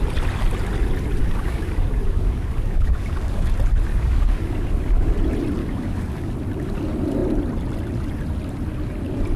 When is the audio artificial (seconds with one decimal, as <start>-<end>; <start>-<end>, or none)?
1.2-3.5; 3.9-5.1; 5.6-6.3